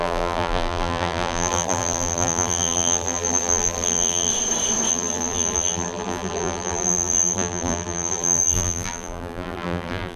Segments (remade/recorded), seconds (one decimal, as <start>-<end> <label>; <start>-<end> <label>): 0.0-4.3 remade; 4.3-4.9 recorded; 4.9-10.2 remade